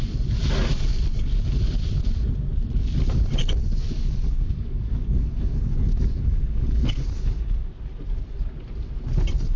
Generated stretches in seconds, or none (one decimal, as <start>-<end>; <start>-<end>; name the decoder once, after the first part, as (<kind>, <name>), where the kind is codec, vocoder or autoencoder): 3.4-7.7 (codec, DAC)